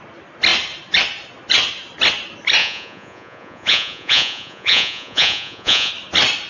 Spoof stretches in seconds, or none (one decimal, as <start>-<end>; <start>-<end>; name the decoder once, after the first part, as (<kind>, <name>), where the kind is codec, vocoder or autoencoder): 2.6-5.9 (vocoder, Vocos)